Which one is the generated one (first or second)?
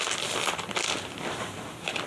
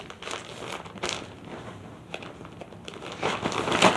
first